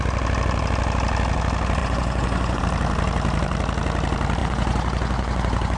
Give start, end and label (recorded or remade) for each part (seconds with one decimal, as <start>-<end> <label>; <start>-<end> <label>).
0.0-1.8 recorded; 1.8-2.6 remade; 2.6-4.4 recorded; 4.4-5.8 remade